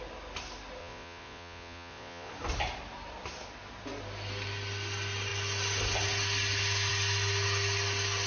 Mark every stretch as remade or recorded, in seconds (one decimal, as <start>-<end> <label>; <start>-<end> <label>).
0.0-0.8 recorded; 0.8-2.3 remade; 2.3-8.3 recorded